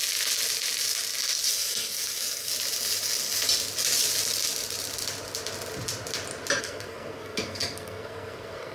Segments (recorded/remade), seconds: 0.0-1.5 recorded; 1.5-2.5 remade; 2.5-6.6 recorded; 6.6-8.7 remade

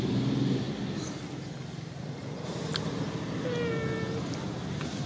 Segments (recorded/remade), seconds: 0.0-5.1 recorded

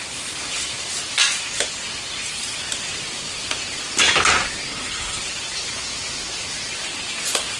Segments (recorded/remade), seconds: 0.0-4.7 recorded; 4.7-5.2 remade; 5.2-7.6 recorded

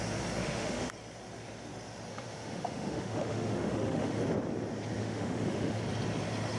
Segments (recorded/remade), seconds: 0.0-0.4 recorded; 0.4-0.9 remade; 0.9-2.1 recorded; 2.1-4.2 remade; 4.2-5.0 recorded; 5.0-5.8 remade; 5.8-6.6 recorded

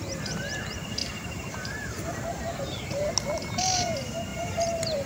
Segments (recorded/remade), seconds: 0.0-1.0 recorded; 1.0-3.1 remade; 3.1-4.3 recorded; 4.3-5.1 remade

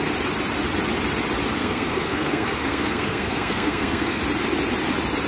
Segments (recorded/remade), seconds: 0.0-1.6 recorded; 1.6-4.2 remade; 4.2-5.3 recorded